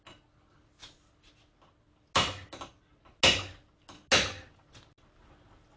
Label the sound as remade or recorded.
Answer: recorded